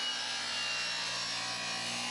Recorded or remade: recorded